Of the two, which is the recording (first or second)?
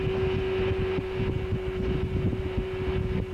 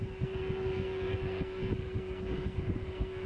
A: first